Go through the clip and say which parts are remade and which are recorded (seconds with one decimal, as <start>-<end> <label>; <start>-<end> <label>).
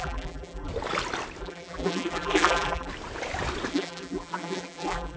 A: 0.0-0.7 remade; 0.7-1.4 recorded; 1.4-2.9 remade; 2.9-3.7 recorded; 3.7-5.2 remade